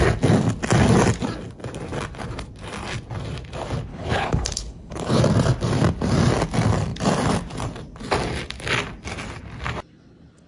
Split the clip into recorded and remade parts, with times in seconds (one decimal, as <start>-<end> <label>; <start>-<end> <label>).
0.0-3.9 recorded; 3.9-5.2 remade; 5.2-10.5 recorded